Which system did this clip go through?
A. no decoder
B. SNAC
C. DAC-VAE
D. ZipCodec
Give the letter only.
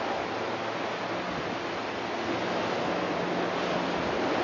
A